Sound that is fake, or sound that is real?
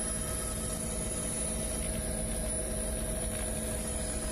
real